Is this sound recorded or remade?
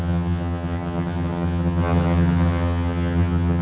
remade